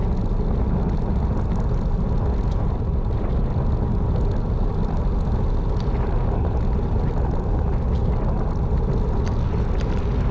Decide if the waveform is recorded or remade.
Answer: recorded